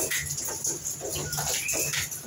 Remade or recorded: recorded